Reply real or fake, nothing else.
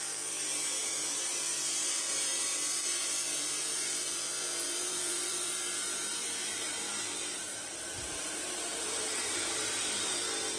fake